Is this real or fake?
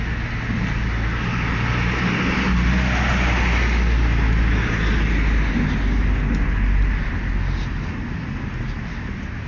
real